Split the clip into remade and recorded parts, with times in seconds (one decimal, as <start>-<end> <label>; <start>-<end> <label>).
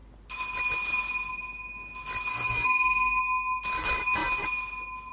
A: 0.0-2.3 recorded; 2.3-3.2 remade; 3.2-5.1 recorded